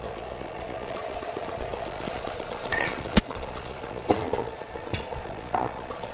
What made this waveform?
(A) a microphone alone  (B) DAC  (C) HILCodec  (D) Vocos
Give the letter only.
D